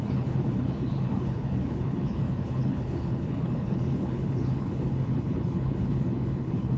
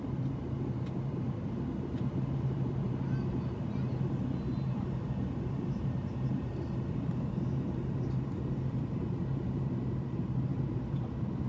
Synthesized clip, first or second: first